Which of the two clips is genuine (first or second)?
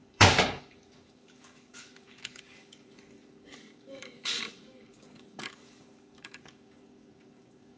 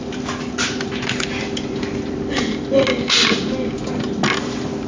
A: second